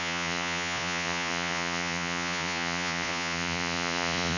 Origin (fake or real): fake